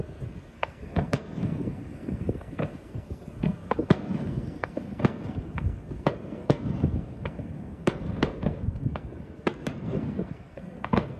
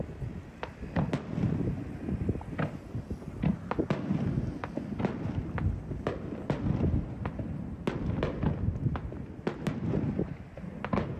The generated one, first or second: first